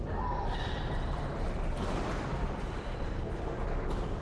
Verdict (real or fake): real